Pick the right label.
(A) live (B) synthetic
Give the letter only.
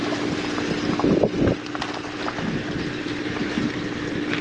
A